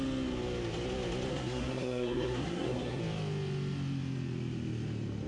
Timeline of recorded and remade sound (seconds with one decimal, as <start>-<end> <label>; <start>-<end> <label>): 0.0-1.3 recorded; 1.3-3.0 remade; 3.0-5.3 recorded